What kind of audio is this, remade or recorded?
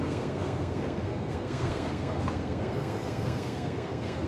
remade